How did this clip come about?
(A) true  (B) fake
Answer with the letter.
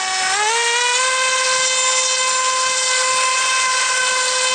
A